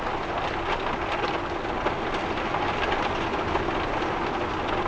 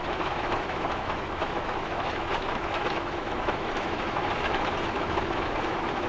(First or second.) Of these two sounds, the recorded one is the first